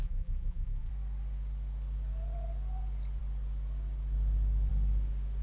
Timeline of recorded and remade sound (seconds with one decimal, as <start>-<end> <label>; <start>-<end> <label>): 0.0-0.9 remade; 0.9-5.4 recorded